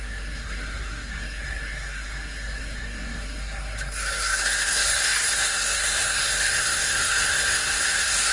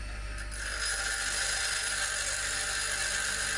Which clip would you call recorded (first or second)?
second